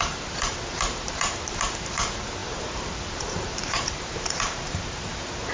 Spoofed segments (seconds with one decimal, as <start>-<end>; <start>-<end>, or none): 0.0-5.5